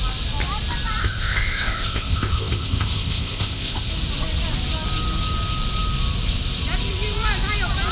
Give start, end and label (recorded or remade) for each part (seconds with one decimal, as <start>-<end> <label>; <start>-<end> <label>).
0.0-1.0 recorded; 1.0-3.9 remade; 3.9-7.9 recorded

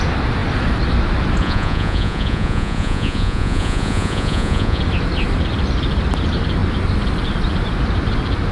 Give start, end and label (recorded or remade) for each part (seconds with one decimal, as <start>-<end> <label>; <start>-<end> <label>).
0.0-1.4 recorded; 1.4-4.8 remade; 4.8-8.5 recorded

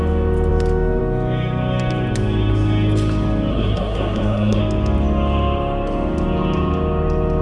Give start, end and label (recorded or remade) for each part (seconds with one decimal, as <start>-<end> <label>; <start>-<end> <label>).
0.0-3.5 recorded; 3.5-4.6 remade; 4.6-7.4 recorded